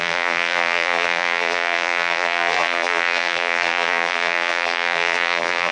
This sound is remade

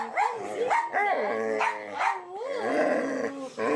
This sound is recorded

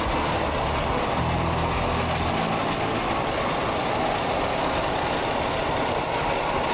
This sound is recorded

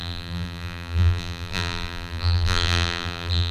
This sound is remade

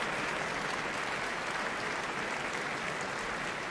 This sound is recorded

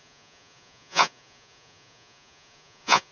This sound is remade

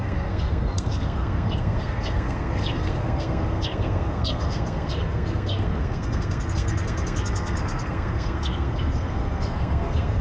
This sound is remade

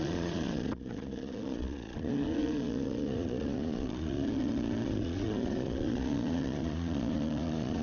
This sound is remade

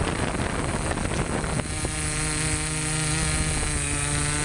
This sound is recorded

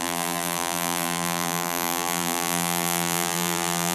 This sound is remade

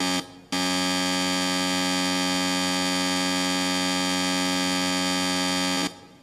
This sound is recorded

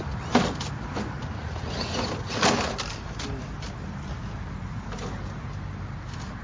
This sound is recorded